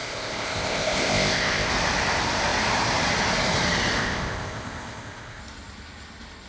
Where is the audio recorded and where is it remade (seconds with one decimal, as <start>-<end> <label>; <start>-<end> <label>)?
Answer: 0.0-1.7 remade; 1.7-4.0 recorded; 4.0-5.4 remade; 5.4-6.5 recorded